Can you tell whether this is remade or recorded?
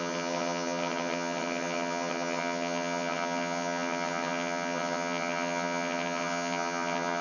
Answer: remade